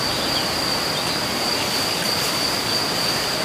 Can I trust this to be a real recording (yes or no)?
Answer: yes